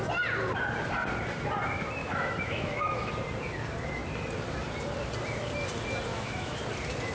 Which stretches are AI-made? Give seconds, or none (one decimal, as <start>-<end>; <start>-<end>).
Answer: 2.0-3.1; 6.1-6.6